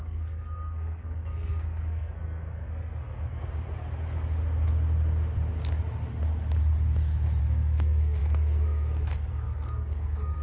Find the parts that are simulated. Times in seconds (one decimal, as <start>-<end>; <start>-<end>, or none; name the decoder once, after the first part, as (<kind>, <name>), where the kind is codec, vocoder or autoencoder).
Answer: 0.0-3.4 (codec, SNAC); 7.4-10.4